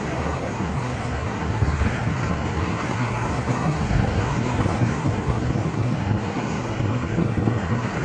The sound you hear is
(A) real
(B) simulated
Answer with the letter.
B